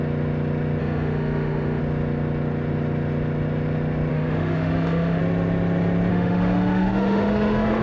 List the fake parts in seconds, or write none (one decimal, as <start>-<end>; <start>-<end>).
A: 0.8-1.8; 4.1-5.2; 6.1-7.8